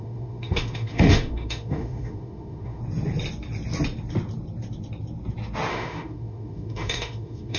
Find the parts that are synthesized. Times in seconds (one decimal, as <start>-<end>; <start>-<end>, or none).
0.0-2.8; 5.7-7.6